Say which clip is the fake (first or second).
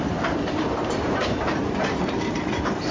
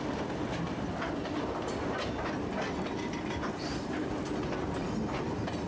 first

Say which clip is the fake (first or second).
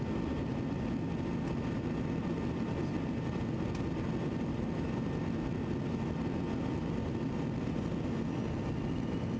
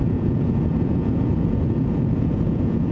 second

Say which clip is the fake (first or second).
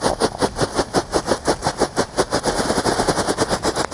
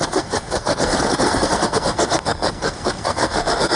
second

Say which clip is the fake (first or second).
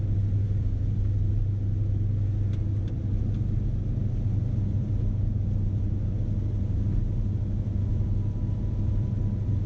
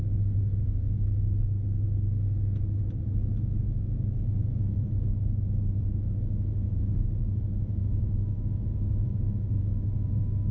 second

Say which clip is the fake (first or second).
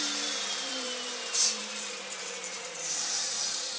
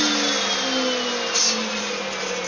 first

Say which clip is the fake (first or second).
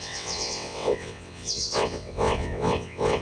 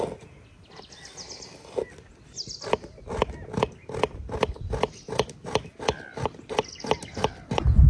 first